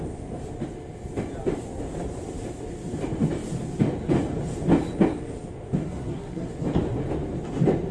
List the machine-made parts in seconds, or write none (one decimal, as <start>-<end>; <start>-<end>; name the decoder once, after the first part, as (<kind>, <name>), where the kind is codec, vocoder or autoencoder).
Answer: 5.8-6.5 (codec, SNAC)